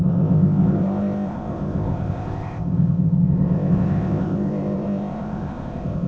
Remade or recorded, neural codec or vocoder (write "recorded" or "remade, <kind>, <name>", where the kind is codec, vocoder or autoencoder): remade, codec, ZipCodec